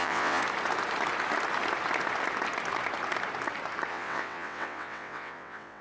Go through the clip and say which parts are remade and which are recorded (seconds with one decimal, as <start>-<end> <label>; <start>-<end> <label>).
0.0-0.4 remade; 0.4-3.9 recorded; 3.9-5.8 remade